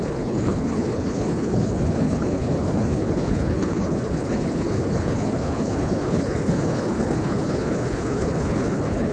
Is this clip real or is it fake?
fake